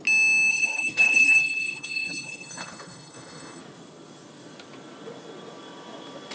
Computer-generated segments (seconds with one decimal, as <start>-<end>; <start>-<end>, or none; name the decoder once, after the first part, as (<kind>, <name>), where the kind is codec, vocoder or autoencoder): 0.5-3.6 (codec, HILCodec)

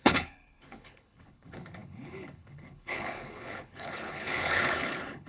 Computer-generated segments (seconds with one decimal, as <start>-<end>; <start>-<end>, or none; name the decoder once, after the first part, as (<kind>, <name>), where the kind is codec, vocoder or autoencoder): 0.0-5.3 (codec, HILCodec)